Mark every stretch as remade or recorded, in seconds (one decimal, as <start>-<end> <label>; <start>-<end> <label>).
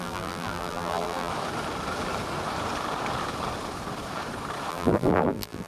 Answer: 0.0-1.3 remade; 1.3-4.7 recorded; 4.7-5.7 remade